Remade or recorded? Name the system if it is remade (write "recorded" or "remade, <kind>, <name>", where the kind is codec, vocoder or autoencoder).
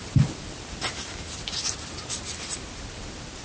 recorded